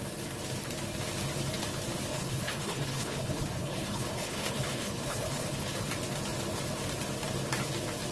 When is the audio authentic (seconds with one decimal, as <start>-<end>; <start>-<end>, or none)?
0.0-2.1; 5.9-8.1